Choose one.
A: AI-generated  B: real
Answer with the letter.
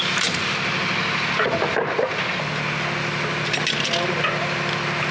B